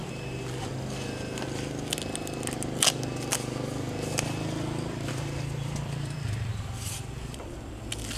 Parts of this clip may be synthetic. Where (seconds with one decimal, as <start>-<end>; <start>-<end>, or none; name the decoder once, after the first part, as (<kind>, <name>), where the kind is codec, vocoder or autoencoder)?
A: 0.0-0.7 (vocoder, BigVGAN v2); 5.1-8.2